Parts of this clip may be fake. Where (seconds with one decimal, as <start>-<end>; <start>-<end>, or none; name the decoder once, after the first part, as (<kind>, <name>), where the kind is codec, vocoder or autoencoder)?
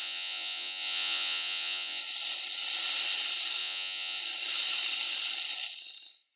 0.0-2.0 (vocoder, Vocos); 3.6-4.2